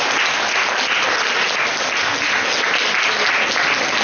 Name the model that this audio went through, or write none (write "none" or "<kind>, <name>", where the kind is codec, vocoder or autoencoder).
none